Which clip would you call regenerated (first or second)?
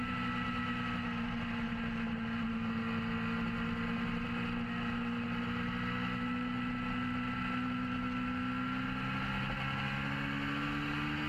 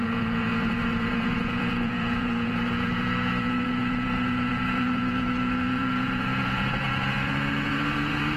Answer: second